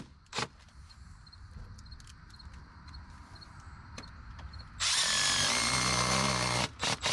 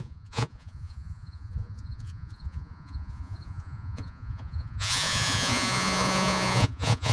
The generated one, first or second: second